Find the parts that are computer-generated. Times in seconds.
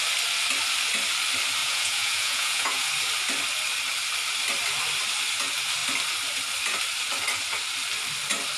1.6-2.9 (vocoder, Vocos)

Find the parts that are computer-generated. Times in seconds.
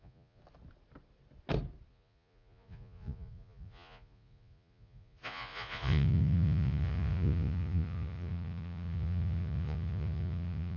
0.0-0.4 (vocoder, Vocos); 1.9-10.8